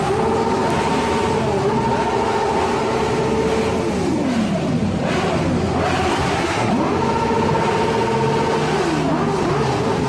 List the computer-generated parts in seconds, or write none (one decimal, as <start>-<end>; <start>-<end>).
6.1-6.7